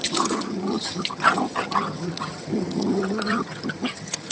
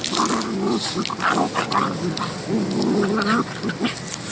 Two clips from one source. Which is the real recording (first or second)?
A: second